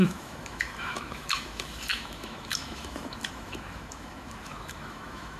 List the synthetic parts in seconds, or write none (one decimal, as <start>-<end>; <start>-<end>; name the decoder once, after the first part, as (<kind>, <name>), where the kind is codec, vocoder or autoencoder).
0.0-5.4 (autoencoder, DAC-VAE)